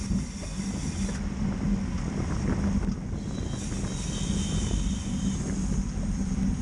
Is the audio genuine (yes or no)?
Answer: yes